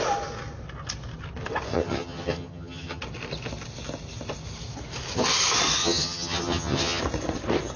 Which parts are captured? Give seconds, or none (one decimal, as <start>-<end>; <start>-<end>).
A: 0.0-1.7; 3.0-5.8; 7.0-7.8